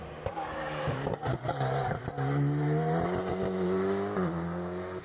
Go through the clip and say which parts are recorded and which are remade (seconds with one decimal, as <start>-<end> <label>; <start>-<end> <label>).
0.0-5.0 recorded